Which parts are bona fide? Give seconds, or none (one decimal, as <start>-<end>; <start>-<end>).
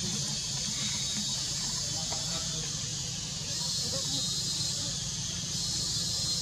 0.0-2.0; 2.5-6.4